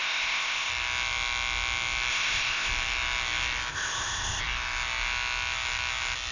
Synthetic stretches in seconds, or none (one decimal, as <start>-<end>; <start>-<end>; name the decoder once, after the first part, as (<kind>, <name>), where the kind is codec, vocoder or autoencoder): 0.0-0.7 (codec, ZipCodec); 2.1-2.7; 3.7-4.4